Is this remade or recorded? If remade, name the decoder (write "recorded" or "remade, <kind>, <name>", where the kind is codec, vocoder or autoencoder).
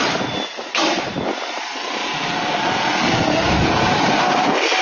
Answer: recorded